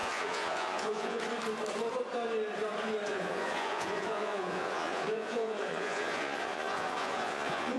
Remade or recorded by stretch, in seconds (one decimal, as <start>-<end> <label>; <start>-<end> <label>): 0.0-1.2 remade; 1.2-3.1 recorded; 3.1-7.8 remade